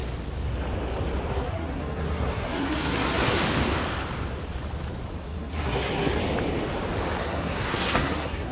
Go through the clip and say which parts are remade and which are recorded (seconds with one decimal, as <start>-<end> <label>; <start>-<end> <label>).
0.0-1.3 recorded; 1.3-3.4 remade; 3.4-5.2 recorded; 5.2-6.2 remade; 6.2-7.2 recorded; 7.2-8.5 remade